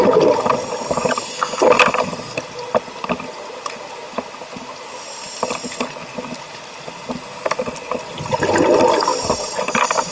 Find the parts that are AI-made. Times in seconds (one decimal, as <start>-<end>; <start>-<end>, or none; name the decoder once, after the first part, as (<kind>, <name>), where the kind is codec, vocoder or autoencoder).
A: none